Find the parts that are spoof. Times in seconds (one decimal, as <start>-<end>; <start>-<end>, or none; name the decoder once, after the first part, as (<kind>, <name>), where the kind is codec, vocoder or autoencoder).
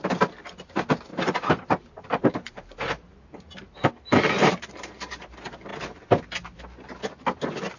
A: 1.1-5.1 (vocoder, BigVGAN v2)